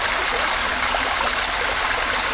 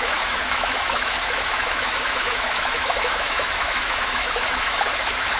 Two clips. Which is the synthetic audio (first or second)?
second